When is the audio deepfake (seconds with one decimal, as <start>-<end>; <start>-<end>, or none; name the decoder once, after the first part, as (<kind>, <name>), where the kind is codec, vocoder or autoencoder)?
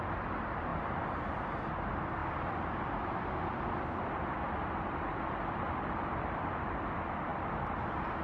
none